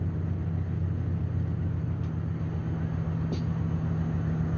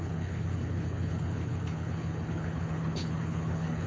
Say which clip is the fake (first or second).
second